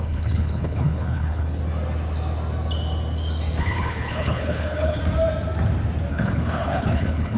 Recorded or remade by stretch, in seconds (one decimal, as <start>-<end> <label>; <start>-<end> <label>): 0.0-1.6 remade; 1.6-3.6 recorded; 3.6-5.0 remade; 5.0-6.1 recorded; 6.1-7.4 remade